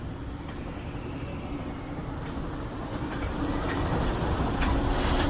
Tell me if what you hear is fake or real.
fake